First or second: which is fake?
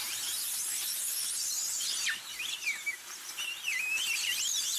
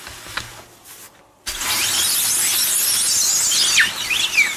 first